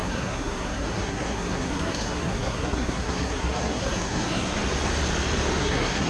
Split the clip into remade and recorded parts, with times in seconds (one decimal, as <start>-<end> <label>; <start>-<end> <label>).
0.0-4.6 remade; 4.6-5.6 recorded; 5.6-6.1 remade